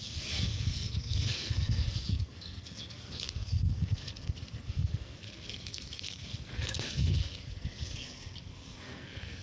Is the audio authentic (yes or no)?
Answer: no